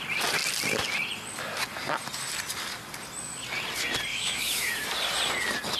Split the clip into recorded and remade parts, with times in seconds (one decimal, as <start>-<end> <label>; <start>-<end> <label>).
0.0-4.1 recorded; 4.1-4.7 remade; 4.7-5.8 recorded